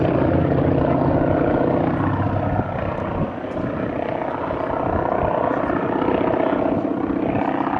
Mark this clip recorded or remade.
recorded